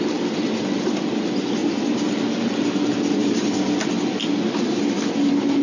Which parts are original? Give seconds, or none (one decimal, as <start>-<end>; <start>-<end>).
0.0-5.6